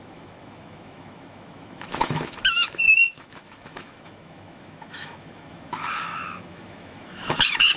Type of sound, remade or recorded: remade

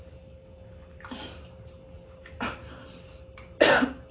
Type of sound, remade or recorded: recorded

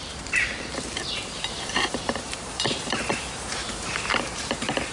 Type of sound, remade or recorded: remade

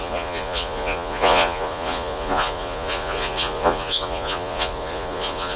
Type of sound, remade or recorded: remade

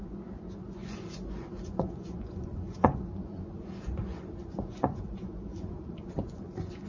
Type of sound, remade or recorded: remade